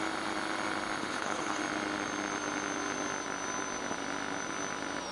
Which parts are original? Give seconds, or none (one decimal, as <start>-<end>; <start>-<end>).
0.0-1.0; 1.6-5.1